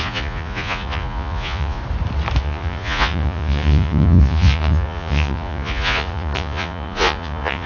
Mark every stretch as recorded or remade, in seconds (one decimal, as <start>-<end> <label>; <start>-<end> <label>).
0.0-1.8 remade; 1.8-2.4 recorded; 2.4-7.7 remade